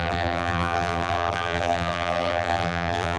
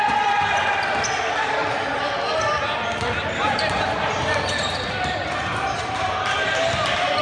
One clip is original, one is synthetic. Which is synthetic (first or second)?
first